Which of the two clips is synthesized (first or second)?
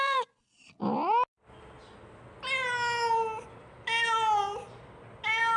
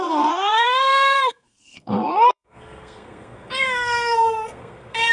second